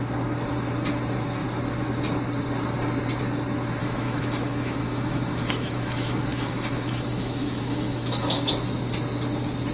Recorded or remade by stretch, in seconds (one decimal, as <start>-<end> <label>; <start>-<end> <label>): 0.0-3.8 recorded; 3.8-8.5 remade; 8.5-9.7 recorded